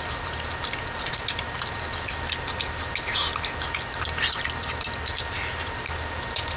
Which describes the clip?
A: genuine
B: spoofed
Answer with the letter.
A